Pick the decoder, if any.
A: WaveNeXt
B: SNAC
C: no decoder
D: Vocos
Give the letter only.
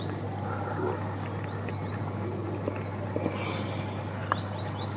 C